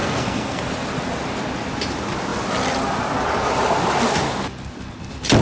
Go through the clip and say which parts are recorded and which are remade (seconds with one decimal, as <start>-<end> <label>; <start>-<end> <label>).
0.0-0.6 remade; 0.6-5.4 recorded

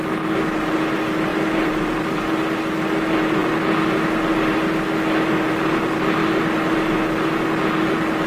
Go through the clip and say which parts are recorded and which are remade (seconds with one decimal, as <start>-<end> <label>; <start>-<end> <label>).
0.0-1.3 recorded; 1.3-2.3 remade; 2.3-8.3 recorded

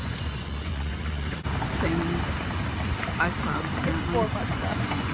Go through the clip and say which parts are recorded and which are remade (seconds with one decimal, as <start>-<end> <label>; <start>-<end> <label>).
0.0-1.4 remade; 1.4-4.5 recorded; 4.5-5.1 remade

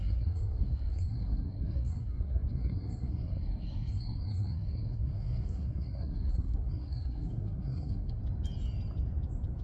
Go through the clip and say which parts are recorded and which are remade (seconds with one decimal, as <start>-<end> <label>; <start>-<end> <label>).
0.0-8.2 remade; 8.2-9.6 recorded

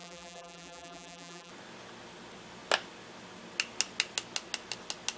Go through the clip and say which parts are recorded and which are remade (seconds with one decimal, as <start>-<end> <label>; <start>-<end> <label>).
0.0-1.5 remade; 1.5-5.2 recorded

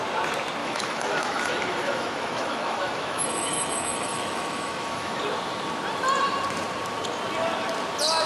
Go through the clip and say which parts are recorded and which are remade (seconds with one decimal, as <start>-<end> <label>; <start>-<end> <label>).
0.0-0.6 recorded; 0.6-5.2 remade; 5.2-8.3 recorded

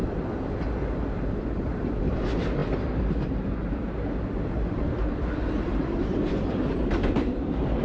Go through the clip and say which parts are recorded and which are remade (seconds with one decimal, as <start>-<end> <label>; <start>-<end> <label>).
0.0-6.6 recorded; 6.6-7.8 remade

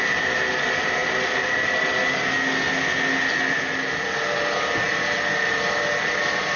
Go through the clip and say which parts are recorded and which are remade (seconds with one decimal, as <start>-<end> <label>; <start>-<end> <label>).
0.0-6.6 recorded